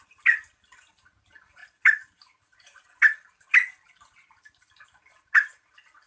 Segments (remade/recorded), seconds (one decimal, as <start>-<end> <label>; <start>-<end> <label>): 0.0-6.1 recorded